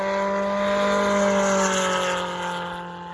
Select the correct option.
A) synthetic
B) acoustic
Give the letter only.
B